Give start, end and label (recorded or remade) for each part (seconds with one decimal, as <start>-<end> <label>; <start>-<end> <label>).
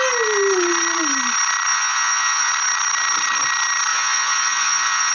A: 0.0-1.7 recorded; 1.7-2.5 remade; 2.5-3.9 recorded; 3.9-5.1 remade